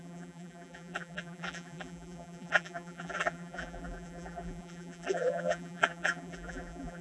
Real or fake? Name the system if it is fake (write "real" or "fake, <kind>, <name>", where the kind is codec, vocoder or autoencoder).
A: fake, vocoder, BigVGAN v2